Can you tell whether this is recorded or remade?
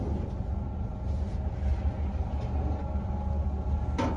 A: recorded